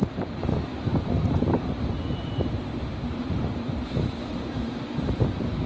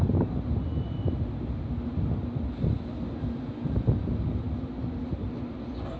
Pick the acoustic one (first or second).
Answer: second